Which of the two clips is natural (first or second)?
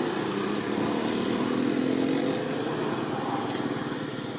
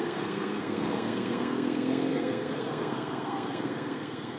first